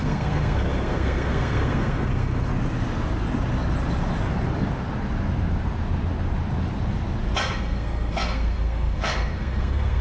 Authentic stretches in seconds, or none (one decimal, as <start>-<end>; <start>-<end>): 2.5-7.6